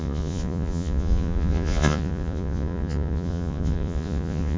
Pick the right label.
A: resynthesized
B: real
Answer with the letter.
A